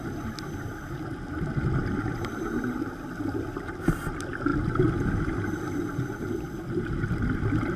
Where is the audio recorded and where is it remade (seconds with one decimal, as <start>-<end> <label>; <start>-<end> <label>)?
0.0-7.8 recorded